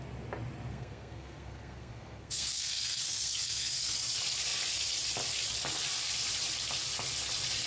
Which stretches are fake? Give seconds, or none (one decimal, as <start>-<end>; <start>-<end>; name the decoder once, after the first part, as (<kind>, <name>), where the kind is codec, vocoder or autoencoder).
0.7-3.9 (codec, SNAC)